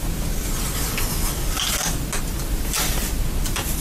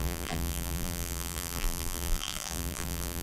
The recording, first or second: first